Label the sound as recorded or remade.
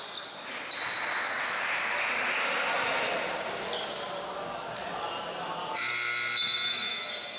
recorded